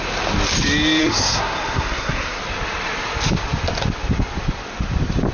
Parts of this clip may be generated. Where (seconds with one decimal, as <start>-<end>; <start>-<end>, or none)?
1.0-2.4